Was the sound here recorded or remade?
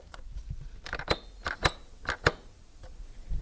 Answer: recorded